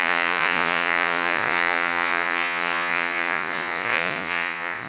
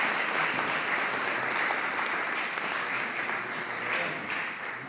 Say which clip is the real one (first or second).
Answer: second